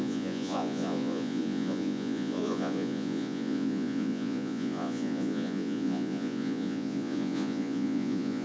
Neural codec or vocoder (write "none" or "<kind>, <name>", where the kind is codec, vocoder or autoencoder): vocoder, Vocos